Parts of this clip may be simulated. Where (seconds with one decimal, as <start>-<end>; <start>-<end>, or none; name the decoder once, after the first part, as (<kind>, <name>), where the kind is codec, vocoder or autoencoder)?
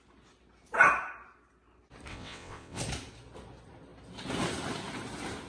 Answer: 2.1-2.8 (vocoder, WaveNeXt)